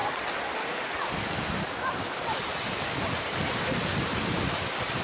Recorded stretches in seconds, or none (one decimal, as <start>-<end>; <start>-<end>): 0.0-5.0